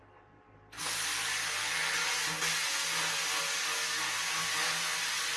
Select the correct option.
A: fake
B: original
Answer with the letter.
B